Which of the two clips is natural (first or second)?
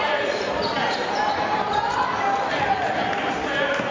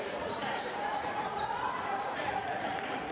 first